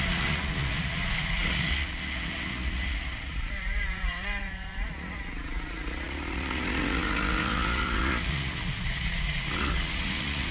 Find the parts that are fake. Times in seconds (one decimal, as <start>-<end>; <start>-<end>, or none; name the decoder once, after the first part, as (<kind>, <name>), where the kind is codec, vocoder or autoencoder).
0.0-10.5 (vocoder, Vocos)